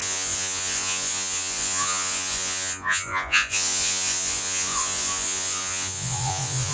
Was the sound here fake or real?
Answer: fake